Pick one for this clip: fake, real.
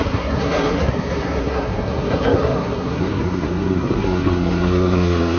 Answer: fake